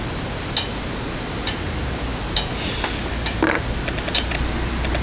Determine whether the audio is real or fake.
real